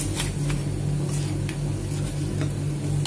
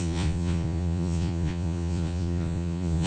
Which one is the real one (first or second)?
first